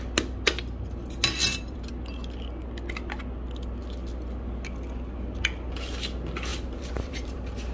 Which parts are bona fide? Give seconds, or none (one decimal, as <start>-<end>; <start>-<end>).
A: 0.0-1.4; 1.9-6.5